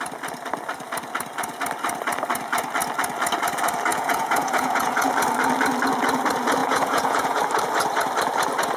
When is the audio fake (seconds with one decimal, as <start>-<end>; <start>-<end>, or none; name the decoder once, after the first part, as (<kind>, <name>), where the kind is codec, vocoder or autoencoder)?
3.9-5.1 (vocoder, Vocos); 6.6-7.4